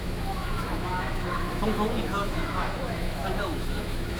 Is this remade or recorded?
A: remade